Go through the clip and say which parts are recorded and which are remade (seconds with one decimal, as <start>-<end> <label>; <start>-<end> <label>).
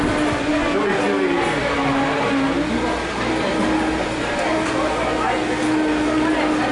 0.0-6.7 recorded